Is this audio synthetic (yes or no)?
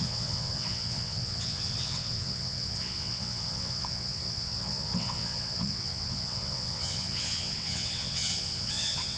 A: yes